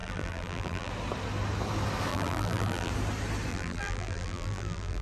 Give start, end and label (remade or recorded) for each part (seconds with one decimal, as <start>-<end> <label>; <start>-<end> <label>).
0.0-0.9 remade; 0.9-2.1 recorded; 2.1-2.9 remade; 2.9-3.5 recorded; 3.5-5.0 remade